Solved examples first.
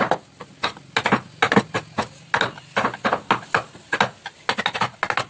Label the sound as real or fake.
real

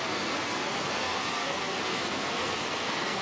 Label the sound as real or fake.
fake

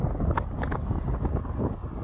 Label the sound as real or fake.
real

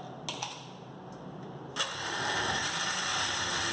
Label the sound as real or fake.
real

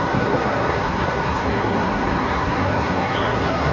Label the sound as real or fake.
fake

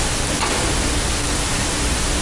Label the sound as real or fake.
real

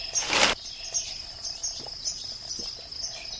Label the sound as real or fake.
real